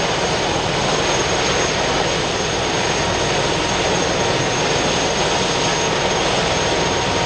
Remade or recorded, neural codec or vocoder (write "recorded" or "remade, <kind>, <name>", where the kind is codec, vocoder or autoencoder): recorded